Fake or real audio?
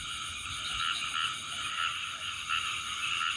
real